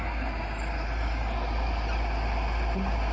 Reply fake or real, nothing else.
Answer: real